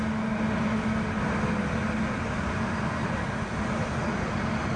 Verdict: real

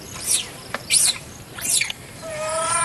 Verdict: fake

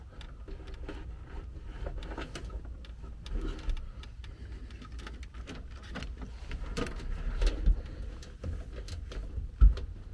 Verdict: real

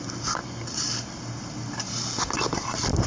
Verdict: real